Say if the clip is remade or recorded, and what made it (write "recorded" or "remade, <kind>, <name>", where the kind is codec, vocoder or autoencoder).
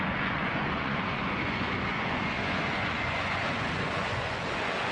remade, vocoder, Vocos